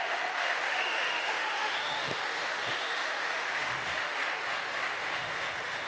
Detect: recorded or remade remade